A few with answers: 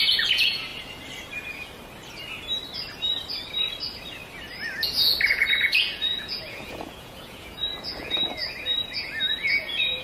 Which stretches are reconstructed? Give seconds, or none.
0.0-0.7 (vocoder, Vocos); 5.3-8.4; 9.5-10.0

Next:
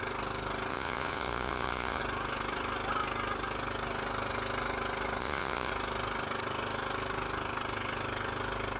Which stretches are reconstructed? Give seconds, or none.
0.7-2.0 (vocoder, Vocos); 5.2-5.7

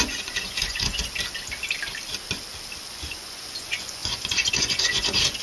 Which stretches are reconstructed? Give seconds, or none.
0.0-1.0 (vocoder, Vocos); 2.9-5.4

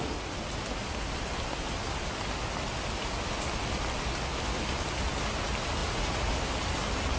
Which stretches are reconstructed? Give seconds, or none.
5.8-6.3 (vocoder, Vocos)

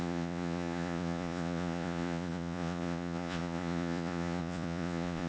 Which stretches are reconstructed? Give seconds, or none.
0.0-5.3 (vocoder, Vocos)

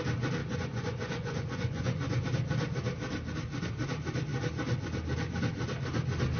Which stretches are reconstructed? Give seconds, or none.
0.4-2.2 (vocoder, Vocos)

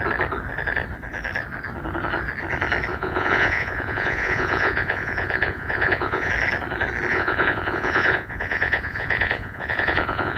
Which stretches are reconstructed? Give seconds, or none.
2.9-6.3 (vocoder, Vocos); 7.1-10.4

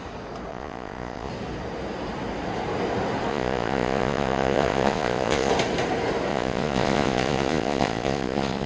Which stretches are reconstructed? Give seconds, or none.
0.5-1.3 (vocoder, Vocos); 3.3-5.5; 6.3-8.7